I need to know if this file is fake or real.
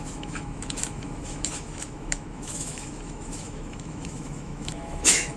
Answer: fake